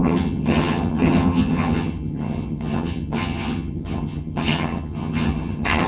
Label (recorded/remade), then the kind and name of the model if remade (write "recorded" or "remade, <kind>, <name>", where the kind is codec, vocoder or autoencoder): remade, vocoder, HiFi-GAN